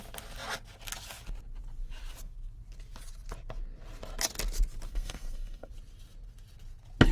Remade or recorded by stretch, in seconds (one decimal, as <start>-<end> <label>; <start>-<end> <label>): 0.0-4.9 recorded; 4.9-5.7 remade; 5.7-7.1 recorded